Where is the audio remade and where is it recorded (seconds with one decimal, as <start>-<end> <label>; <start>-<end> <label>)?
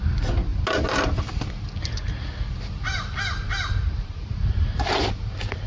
0.0-5.7 recorded